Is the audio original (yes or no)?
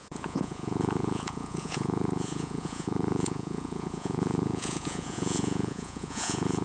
no